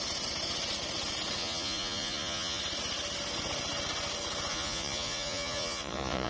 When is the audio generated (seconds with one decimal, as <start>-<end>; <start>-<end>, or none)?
1.4-2.6; 4.5-6.3